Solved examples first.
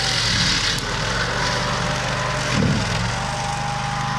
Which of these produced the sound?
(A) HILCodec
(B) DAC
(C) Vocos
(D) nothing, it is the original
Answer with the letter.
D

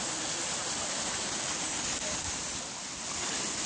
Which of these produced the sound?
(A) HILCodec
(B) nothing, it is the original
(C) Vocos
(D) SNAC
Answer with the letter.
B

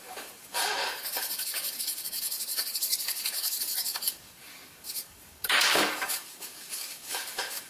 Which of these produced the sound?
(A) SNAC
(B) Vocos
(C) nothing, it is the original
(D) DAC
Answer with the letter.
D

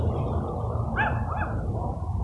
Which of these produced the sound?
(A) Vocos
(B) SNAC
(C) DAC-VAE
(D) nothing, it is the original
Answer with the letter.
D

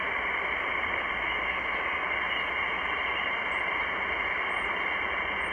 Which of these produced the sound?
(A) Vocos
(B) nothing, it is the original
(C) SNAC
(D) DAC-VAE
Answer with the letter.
B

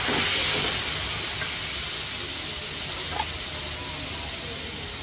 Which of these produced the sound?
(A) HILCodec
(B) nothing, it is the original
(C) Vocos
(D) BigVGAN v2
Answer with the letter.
B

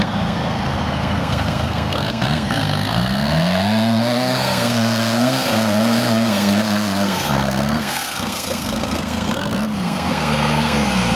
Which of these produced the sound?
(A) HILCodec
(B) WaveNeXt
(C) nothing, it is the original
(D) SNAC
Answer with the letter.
D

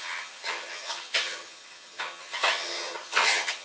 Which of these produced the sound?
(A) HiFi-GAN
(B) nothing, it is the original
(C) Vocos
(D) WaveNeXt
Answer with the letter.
A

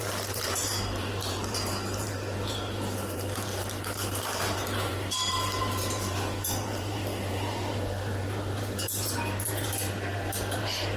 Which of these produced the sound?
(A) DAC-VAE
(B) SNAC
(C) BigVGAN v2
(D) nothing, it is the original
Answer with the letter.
C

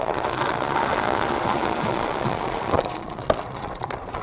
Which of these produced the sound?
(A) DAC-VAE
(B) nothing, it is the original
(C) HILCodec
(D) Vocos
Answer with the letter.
D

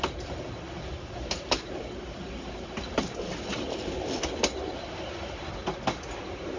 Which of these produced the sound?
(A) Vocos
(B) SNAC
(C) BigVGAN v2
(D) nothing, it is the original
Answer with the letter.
D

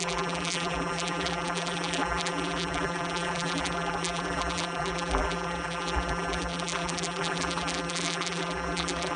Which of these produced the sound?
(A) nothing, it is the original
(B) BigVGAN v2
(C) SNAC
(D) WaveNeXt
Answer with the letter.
B